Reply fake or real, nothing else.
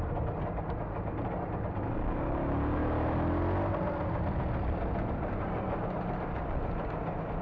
real